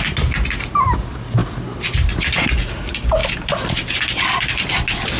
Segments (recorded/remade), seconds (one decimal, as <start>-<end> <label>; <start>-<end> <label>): 0.0-5.2 recorded